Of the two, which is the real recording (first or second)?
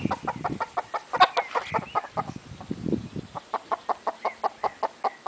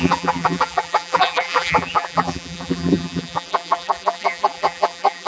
first